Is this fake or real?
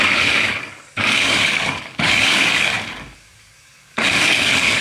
fake